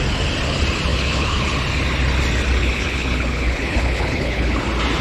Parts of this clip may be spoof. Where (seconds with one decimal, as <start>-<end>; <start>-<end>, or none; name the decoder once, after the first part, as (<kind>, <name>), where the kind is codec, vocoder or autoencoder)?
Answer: 0.9-1.4 (codec, HILCodec); 2.6-4.6